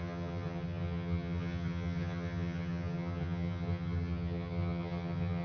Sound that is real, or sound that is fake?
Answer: fake